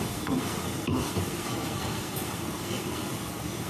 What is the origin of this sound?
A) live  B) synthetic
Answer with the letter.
B